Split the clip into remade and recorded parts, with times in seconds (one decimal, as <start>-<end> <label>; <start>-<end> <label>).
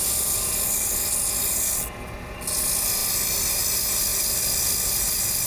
0.0-5.5 recorded